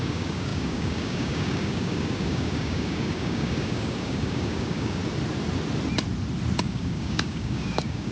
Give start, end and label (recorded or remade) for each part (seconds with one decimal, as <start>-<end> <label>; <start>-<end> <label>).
0.0-5.0 remade; 5.0-6.6 recorded; 6.6-8.1 remade